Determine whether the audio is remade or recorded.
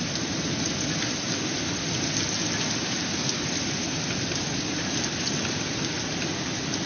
recorded